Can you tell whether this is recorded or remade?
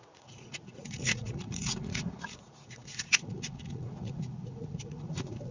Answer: remade